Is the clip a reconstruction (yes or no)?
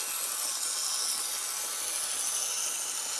no